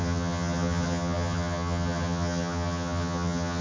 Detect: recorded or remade remade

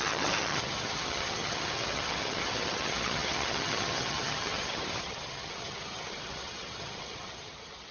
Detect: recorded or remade remade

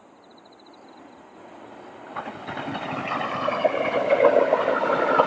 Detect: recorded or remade recorded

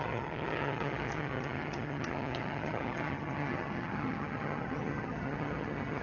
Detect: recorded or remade remade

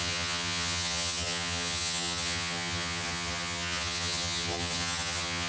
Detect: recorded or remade remade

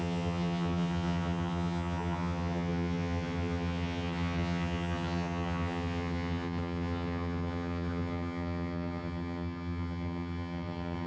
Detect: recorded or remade remade